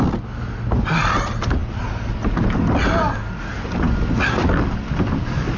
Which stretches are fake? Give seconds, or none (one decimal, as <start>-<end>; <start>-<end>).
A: none